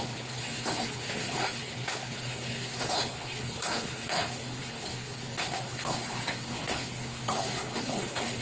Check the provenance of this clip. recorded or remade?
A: remade